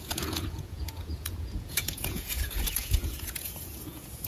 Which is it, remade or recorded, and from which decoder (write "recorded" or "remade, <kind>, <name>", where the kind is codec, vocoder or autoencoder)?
remade, vocoder, Vocos